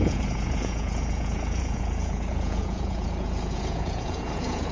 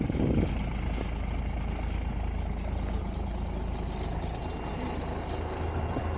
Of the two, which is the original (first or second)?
second